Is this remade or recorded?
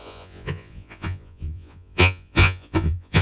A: remade